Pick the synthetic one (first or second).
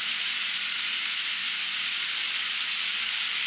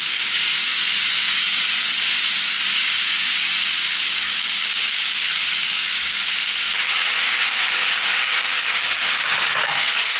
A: second